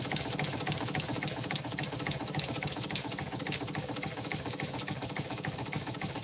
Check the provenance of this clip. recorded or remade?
remade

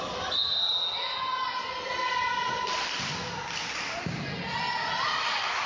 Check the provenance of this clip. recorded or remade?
recorded